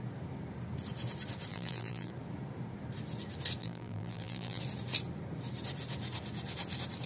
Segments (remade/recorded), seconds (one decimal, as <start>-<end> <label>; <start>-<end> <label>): 0.0-1.5 recorded; 1.5-2.1 remade; 2.1-3.6 recorded; 3.6-4.6 remade; 4.6-7.1 recorded